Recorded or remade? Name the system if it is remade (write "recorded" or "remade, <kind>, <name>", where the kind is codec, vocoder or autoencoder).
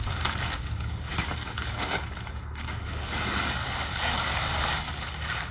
remade, codec, DAC